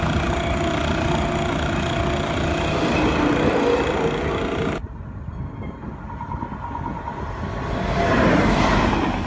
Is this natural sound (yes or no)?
yes